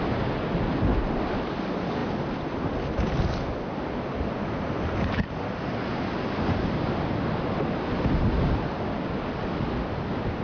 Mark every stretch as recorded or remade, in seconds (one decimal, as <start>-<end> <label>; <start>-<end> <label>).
0.0-10.4 recorded